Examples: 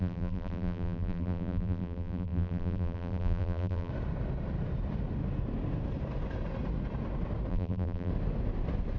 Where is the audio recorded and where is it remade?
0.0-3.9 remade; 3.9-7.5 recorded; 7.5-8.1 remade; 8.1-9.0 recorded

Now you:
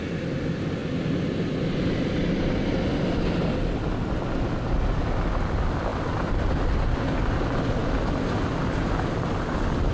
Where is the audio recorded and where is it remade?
0.0-9.9 recorded